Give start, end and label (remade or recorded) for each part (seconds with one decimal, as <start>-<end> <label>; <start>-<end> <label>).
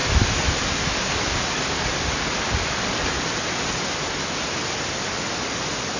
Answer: 0.0-6.0 recorded